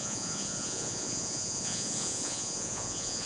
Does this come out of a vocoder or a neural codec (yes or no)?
yes